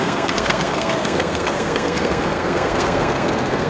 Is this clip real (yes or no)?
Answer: no